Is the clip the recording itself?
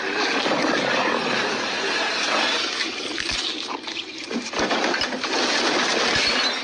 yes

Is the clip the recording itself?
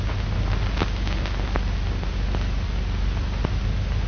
yes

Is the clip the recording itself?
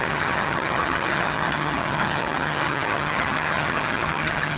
no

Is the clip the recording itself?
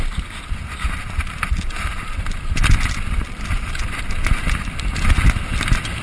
yes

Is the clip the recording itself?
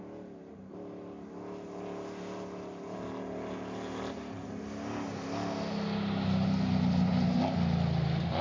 yes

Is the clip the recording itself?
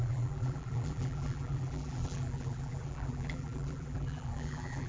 no